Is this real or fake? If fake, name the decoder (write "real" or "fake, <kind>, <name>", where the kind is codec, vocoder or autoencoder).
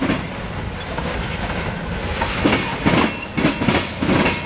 real